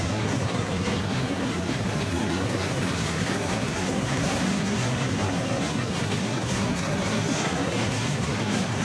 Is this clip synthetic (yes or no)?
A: yes